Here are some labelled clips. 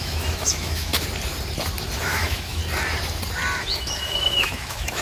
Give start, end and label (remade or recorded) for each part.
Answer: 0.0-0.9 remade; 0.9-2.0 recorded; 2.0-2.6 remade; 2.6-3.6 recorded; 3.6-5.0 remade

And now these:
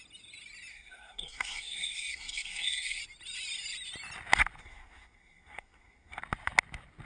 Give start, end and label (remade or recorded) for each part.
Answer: 0.0-0.7 recorded; 0.7-3.0 remade; 3.0-4.6 recorded; 4.6-6.2 remade; 6.2-7.1 recorded

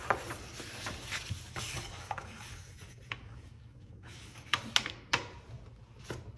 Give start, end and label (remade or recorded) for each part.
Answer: 0.0-1.5 recorded; 1.5-4.6 remade; 4.6-6.4 recorded

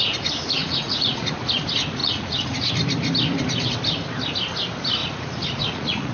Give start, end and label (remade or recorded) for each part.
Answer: 0.0-0.6 recorded; 0.6-1.5 remade; 1.5-2.0 recorded; 2.0-2.7 remade; 2.7-5.0 recorded; 5.0-6.1 remade

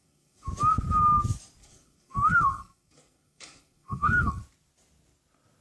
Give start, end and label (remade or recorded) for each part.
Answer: 0.0-0.5 remade; 0.5-1.6 recorded; 1.6-4.4 remade; 4.4-5.6 recorded